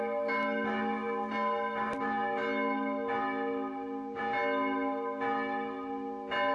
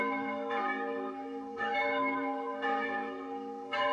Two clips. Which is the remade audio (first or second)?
second